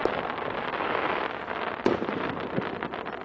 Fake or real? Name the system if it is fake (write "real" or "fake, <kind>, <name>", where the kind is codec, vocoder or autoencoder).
real